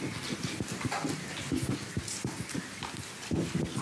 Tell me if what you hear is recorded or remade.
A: recorded